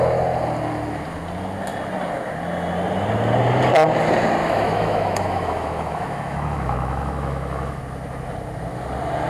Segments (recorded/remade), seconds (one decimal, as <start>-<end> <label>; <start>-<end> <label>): 0.0-4.4 recorded; 4.4-7.8 remade; 7.8-9.3 recorded